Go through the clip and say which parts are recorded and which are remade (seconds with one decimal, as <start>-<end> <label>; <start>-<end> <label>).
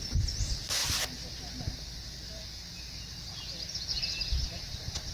0.0-5.1 recorded